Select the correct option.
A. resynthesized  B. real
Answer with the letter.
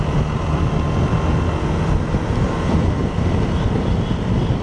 B